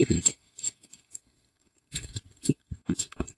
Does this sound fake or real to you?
fake